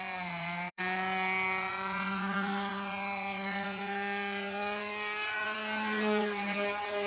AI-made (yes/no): yes